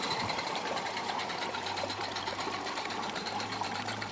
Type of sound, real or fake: fake